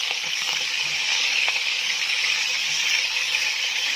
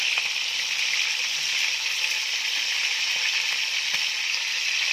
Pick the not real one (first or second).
first